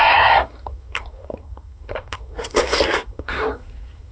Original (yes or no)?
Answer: no